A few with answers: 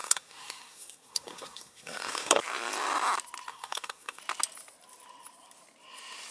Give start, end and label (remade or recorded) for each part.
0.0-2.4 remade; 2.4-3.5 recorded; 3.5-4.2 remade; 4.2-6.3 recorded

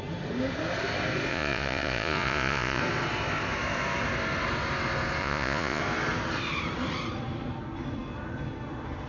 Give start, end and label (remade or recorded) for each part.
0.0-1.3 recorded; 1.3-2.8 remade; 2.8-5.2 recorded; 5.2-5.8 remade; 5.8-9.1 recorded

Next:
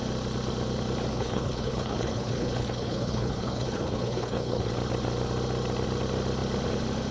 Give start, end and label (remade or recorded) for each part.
0.0-1.1 recorded; 1.1-4.7 remade; 4.7-7.1 recorded